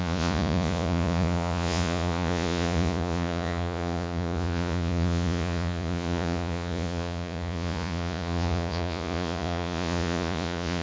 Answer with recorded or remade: remade